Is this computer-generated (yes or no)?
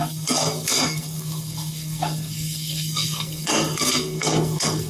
yes